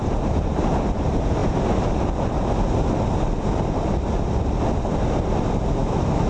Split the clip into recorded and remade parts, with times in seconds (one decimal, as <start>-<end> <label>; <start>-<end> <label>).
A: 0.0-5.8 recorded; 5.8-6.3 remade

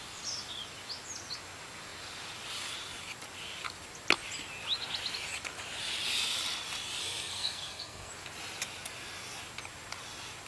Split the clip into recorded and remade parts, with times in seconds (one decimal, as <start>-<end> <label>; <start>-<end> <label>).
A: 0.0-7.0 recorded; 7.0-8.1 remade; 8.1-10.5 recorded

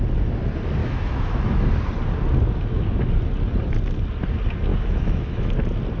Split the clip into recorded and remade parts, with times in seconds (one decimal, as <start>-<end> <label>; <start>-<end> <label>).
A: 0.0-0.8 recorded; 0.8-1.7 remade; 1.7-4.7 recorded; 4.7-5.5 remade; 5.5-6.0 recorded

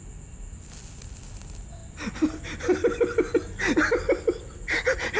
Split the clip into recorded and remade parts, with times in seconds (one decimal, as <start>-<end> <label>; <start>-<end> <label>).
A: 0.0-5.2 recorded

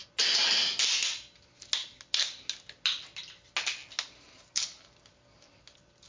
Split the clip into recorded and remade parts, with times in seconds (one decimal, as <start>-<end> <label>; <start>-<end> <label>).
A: 0.0-6.1 recorded

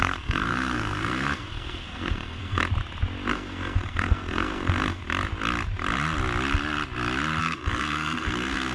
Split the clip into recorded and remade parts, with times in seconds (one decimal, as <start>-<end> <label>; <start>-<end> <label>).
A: 0.0-2.6 remade; 2.6-3.3 recorded; 3.3-5.0 remade; 5.0-7.4 recorded; 7.4-8.7 remade